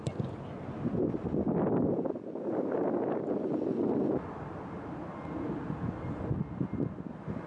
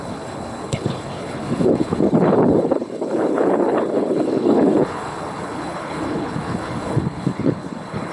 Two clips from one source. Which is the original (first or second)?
first